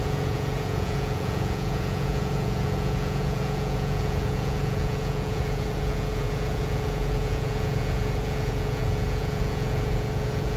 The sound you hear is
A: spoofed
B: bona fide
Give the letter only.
A